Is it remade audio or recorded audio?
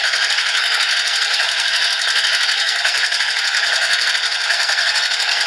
remade